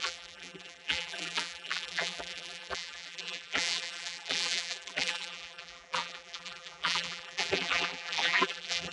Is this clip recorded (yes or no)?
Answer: no